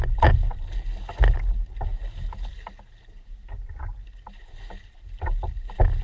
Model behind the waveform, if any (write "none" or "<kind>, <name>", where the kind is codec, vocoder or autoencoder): none